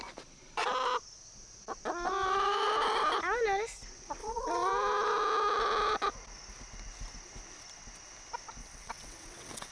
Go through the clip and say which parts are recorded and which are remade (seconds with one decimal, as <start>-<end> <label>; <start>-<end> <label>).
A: 0.0-4.2 recorded; 4.2-4.7 remade; 4.7-8.6 recorded; 8.6-9.7 remade